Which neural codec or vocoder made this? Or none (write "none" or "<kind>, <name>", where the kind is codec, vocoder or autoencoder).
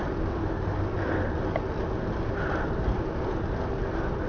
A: none